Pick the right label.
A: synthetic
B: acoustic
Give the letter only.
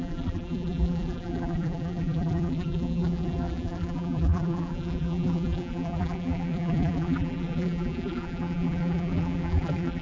A